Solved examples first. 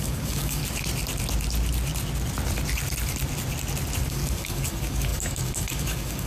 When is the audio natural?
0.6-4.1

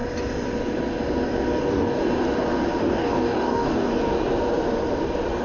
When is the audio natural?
0.0-1.6; 2.0-2.8; 3.9-5.4

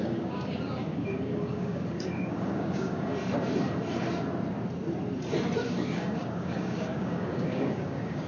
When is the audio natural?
3.1-5.7

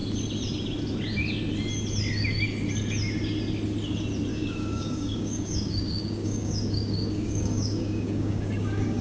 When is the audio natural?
0.0-4.3